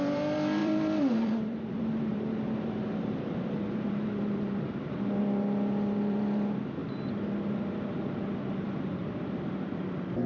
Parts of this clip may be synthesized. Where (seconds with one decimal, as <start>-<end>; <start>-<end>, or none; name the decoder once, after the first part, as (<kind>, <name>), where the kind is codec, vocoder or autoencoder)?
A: 0.0-6.8 (vocoder, BigVGAN v2); 7.5-10.3

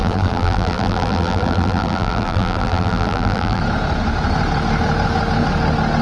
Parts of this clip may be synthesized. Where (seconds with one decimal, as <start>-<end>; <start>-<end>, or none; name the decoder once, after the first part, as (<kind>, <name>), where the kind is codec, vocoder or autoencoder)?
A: 0.0-3.6 (vocoder, BigVGAN v2)

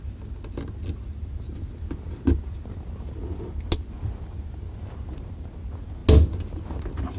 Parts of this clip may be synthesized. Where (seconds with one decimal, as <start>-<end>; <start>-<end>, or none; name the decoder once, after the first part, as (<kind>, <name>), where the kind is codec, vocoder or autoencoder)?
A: none

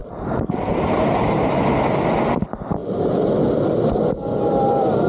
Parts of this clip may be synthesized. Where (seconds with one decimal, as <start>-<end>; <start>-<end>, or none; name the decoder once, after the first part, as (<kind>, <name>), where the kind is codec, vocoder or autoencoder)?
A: 0.0-1.9 (vocoder, BigVGAN v2); 2.8-3.3